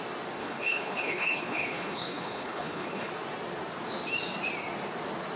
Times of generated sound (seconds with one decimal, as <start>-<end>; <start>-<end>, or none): 0.4-3.1